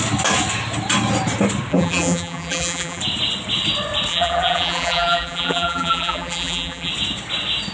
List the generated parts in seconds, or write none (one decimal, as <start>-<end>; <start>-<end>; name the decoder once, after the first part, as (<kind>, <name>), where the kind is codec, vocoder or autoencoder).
1.7-3.0 (vocoder, BigVGAN v2); 4.1-6.9